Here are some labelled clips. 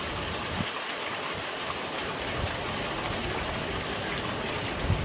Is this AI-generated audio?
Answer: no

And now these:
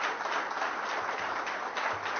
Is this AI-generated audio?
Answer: no